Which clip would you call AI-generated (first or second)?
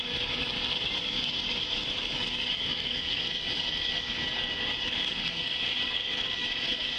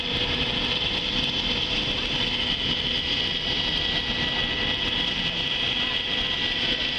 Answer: first